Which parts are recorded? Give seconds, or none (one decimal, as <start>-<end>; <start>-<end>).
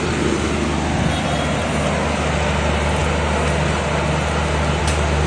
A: 0.0-5.3